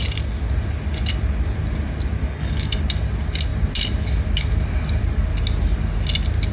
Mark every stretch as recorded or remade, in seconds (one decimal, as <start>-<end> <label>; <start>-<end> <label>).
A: 0.0-2.2 recorded; 2.2-2.8 remade; 2.8-6.5 recorded